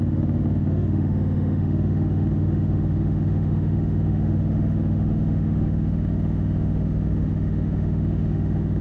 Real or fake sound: fake